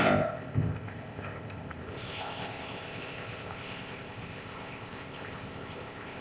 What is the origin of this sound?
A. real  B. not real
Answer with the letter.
B